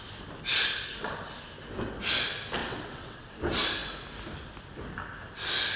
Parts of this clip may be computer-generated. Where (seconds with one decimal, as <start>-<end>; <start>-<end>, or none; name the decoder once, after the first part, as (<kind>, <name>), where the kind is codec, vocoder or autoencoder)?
2.6-3.4 (vocoder, WaveNeXt)